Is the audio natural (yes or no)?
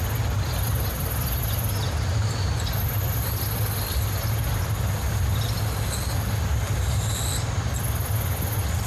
yes